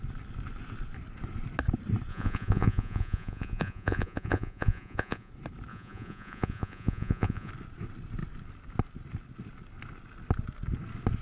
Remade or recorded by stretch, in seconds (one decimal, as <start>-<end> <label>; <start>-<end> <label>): 0.0-2.1 recorded; 2.1-5.3 remade; 5.3-5.7 recorded; 5.7-7.5 remade; 7.5-11.2 recorded